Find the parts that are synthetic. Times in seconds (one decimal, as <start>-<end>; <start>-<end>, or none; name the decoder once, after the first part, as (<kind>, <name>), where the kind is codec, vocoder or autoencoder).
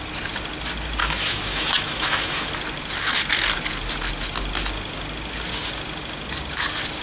1.0-2.5 (autoencoder, DAC-VAE)